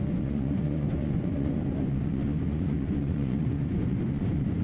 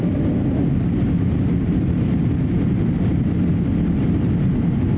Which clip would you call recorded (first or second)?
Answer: second